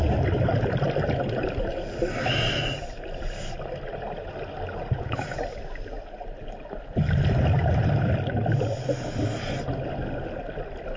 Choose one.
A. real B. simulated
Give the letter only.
A